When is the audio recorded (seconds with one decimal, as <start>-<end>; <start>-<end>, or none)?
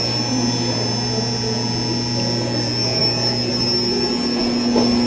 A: 0.0-5.1